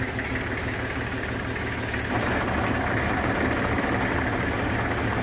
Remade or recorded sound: recorded